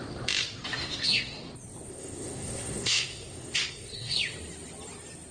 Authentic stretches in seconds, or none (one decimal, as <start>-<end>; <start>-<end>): 0.0-0.8; 1.5-1.9; 4.2-5.3